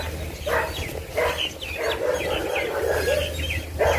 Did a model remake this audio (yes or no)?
no